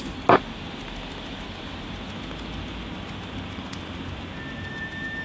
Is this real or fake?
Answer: real